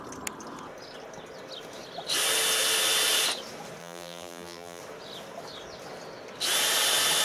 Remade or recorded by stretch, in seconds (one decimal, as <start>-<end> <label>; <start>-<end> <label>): 0.0-3.8 recorded; 3.8-4.8 remade; 4.8-7.2 recorded